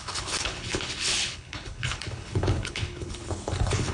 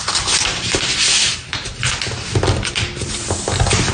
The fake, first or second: first